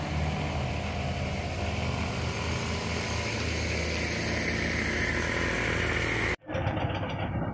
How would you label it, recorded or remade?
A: recorded